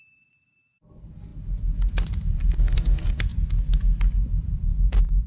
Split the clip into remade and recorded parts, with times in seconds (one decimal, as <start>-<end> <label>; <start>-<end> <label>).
0.0-3.3 remade; 3.3-4.1 recorded; 4.1-5.3 remade